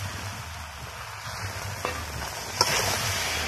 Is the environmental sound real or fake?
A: real